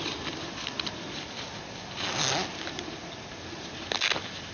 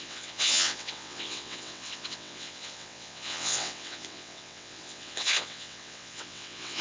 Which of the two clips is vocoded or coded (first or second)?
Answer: second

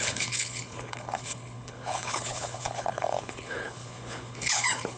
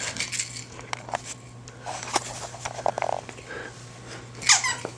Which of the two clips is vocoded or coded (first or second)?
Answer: first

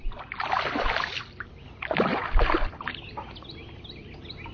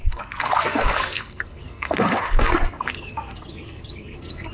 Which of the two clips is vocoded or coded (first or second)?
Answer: second